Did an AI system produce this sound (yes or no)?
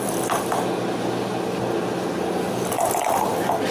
no